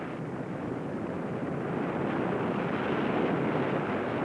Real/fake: real